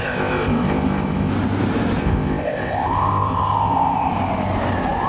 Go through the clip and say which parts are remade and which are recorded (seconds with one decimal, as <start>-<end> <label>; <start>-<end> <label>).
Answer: 0.0-1.3 remade; 1.3-2.0 recorded; 2.0-4.1 remade; 4.1-5.1 recorded